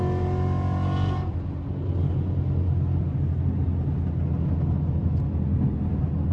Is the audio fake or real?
real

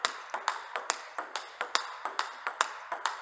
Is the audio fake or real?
real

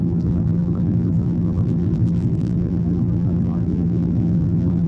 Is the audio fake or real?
fake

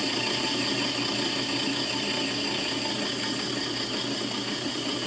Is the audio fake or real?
real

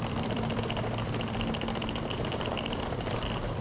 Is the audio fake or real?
fake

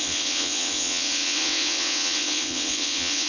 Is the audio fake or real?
fake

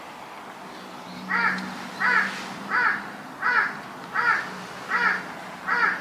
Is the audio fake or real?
real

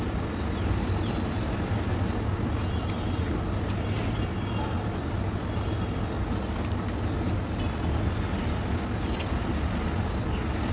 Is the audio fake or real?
real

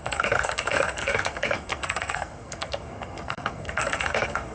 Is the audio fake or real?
fake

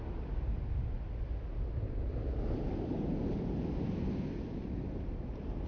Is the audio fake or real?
real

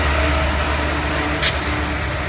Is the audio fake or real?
real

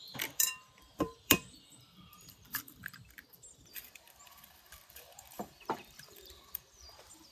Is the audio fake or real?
fake